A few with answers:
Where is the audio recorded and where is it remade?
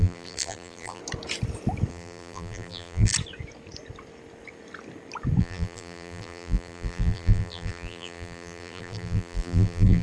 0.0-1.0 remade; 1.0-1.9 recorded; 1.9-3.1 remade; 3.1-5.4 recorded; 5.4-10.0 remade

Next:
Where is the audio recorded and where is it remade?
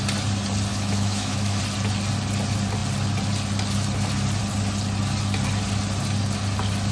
0.0-0.7 recorded; 0.7-1.6 remade; 1.6-6.9 recorded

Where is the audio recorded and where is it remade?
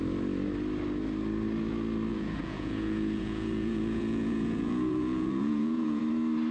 0.0-2.1 recorded; 2.1-6.0 remade; 6.0-6.5 recorded